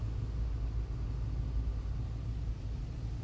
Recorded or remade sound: recorded